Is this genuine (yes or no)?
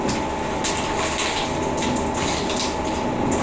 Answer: yes